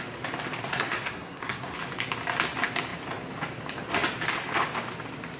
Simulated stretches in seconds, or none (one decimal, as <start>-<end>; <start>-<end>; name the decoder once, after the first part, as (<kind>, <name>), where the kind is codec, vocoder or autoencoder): 0.7-1.8 (codec, SNAC)